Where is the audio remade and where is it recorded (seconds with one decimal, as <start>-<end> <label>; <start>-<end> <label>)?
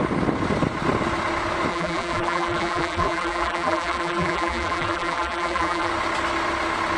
0.0-1.7 recorded; 1.7-5.9 remade; 5.9-7.0 recorded